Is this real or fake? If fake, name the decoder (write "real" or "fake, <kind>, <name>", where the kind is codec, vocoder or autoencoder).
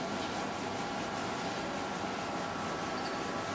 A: real